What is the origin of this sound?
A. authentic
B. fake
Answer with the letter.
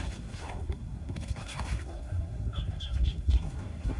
B